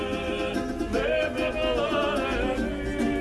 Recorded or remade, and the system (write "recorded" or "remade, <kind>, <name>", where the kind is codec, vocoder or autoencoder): recorded